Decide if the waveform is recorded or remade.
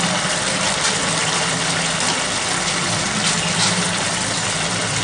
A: recorded